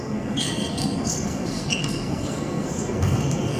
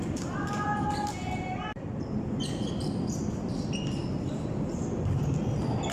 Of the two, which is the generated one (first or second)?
first